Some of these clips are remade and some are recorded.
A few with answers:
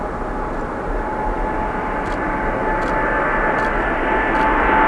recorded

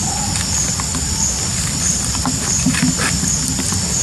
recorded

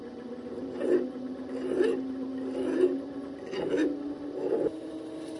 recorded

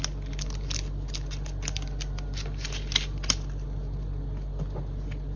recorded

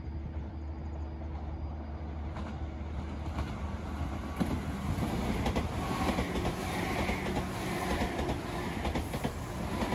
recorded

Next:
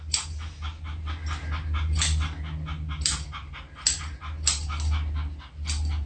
recorded